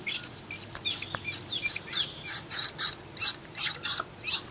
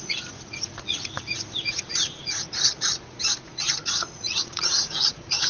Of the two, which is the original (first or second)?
first